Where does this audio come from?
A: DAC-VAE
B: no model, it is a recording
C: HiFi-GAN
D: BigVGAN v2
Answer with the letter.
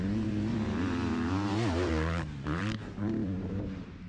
D